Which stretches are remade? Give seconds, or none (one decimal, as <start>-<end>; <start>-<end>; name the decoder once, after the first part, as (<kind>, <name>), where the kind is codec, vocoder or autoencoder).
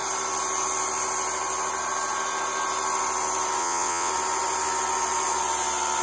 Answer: 3.6-4.1 (vocoder, WaveNeXt)